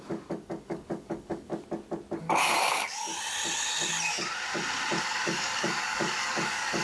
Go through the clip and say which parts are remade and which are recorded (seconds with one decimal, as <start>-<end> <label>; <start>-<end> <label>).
0.0-1.5 remade; 1.5-2.2 recorded; 2.2-3.1 remade; 3.1-5.0 recorded; 5.0-6.8 remade